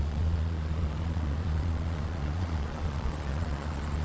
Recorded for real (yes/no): no